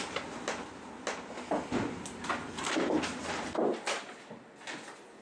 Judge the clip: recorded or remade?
recorded